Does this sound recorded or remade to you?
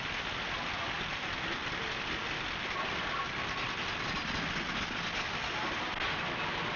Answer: recorded